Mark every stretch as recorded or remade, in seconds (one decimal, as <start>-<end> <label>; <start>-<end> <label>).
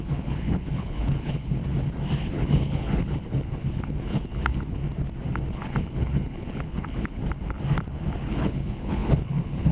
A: 0.0-1.6 remade; 1.6-2.2 recorded; 2.2-4.8 remade; 4.8-5.5 recorded; 5.5-7.2 remade; 7.2-8.3 recorded; 8.3-9.7 remade